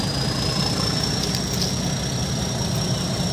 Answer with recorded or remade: recorded